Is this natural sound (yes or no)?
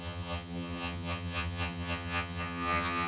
no